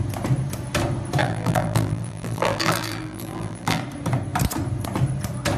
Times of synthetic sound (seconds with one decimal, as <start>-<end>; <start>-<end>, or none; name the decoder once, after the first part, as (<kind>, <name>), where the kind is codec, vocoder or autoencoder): 1.2-3.8 (vocoder, BigVGAN v2)